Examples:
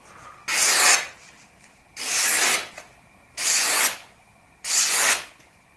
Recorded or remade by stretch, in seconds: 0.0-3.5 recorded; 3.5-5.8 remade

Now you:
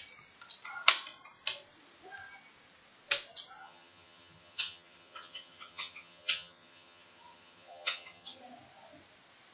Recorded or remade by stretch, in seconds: 0.0-3.6 recorded; 3.6-8.4 remade; 8.4-9.5 recorded

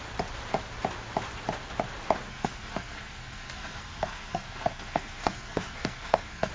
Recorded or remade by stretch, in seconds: 0.0-2.3 recorded; 2.3-6.5 remade

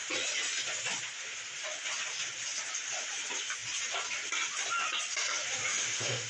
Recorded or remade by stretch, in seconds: 0.0-5.7 recorded; 5.7-6.3 remade

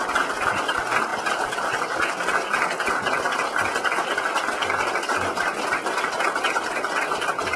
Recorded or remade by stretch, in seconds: 0.0-7.6 recorded